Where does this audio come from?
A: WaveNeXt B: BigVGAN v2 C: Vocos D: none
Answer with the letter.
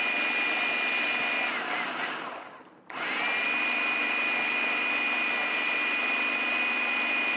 D